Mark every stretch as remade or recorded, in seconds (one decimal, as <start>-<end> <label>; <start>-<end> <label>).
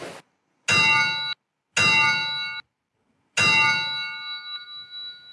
0.0-5.3 recorded